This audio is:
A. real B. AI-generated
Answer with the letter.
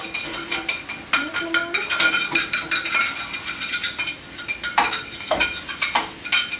A